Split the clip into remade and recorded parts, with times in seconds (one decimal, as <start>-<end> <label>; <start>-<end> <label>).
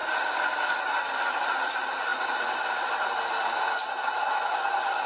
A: 0.0-5.1 recorded